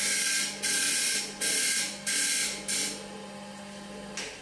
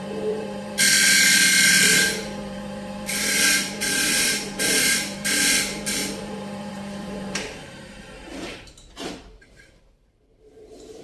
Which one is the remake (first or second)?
second